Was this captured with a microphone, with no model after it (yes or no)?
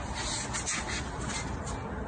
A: yes